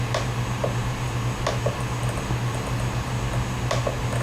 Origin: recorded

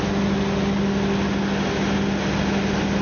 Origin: recorded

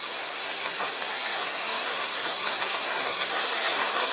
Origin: remade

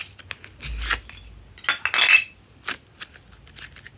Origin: recorded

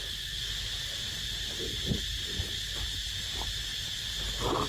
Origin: recorded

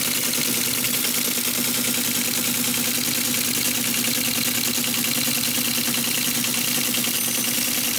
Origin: recorded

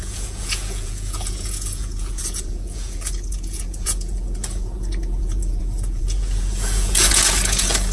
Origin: remade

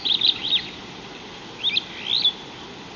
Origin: recorded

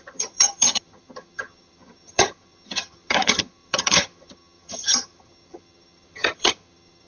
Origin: remade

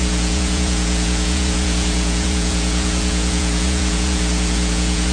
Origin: remade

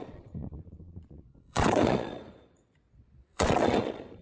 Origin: remade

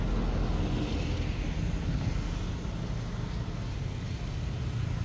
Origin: recorded